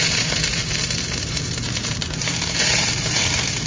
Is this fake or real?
fake